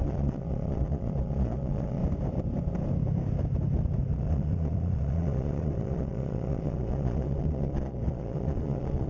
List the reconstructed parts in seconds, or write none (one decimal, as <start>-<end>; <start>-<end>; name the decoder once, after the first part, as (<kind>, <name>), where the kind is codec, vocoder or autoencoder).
0.0-2.0 (vocoder, Vocos); 4.1-9.1